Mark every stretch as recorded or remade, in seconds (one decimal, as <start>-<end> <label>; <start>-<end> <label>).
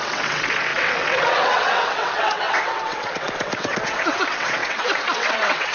0.0-5.7 remade